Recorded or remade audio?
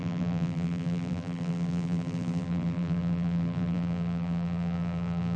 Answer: remade